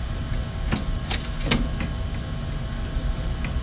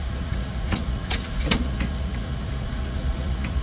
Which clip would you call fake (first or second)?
second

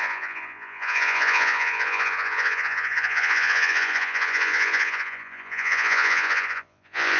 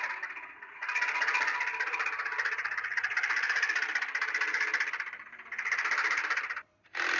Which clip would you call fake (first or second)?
first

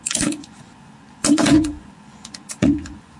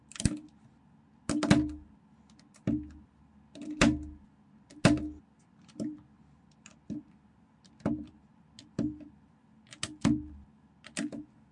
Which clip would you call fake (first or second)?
first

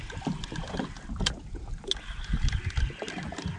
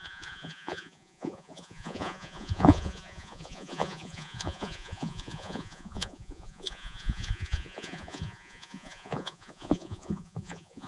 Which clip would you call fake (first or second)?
second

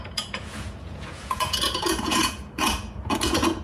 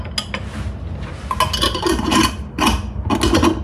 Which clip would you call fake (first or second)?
first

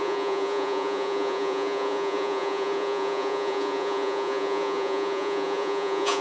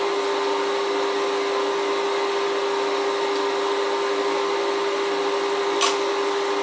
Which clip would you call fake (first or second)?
first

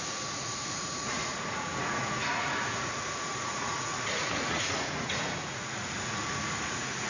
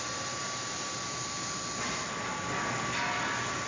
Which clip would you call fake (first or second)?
first